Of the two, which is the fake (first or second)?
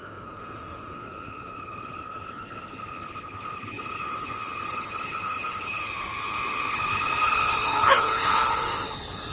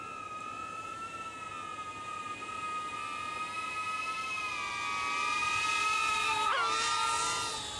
first